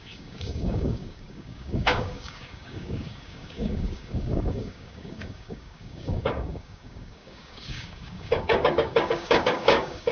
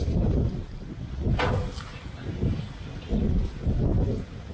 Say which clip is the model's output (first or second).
first